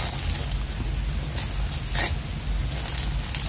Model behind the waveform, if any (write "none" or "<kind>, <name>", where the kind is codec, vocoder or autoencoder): none